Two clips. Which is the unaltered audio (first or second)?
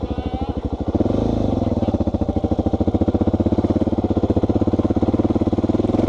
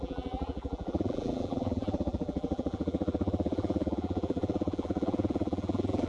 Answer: first